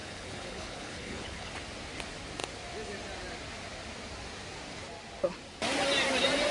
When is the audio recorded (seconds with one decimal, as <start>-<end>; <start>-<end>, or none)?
1.5-6.5